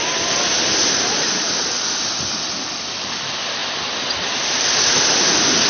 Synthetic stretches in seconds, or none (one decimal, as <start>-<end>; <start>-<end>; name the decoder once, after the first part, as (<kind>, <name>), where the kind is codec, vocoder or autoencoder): none